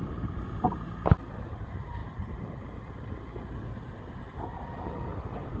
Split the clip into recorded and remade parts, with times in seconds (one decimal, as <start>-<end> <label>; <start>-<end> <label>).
0.0-5.6 recorded